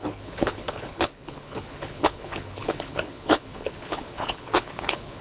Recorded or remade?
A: remade